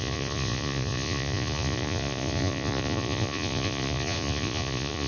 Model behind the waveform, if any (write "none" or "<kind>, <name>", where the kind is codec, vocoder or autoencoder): vocoder, Vocos